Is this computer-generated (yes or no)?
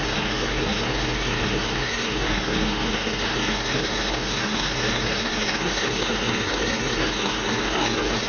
yes